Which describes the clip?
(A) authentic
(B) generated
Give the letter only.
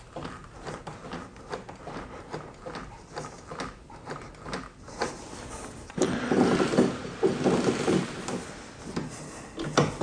A